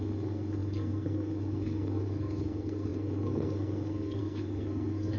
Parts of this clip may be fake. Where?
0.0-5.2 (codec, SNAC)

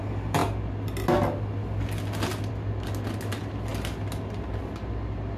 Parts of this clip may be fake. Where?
none

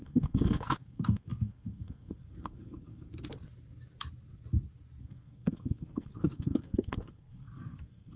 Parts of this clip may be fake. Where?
0.0-3.1 (codec, SNAC); 5.0-8.2

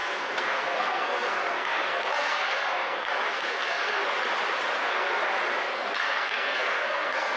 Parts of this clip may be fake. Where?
0.0-4.0 (codec, SNAC); 4.8-5.2; 5.7-7.4